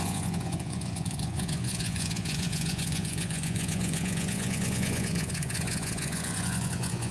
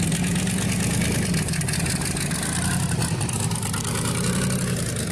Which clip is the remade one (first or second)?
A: first